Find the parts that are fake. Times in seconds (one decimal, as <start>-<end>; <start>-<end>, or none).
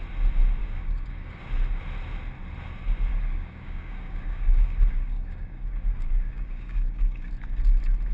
0.6-1.4; 3.1-7.3